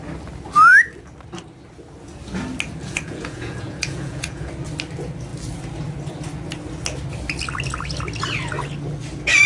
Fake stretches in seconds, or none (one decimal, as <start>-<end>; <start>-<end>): 2.8-4.5